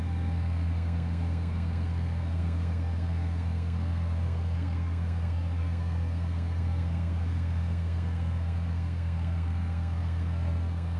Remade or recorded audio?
remade